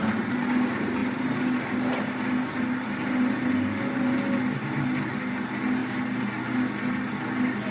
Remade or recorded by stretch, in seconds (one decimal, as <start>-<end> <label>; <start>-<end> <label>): 0.0-7.7 recorded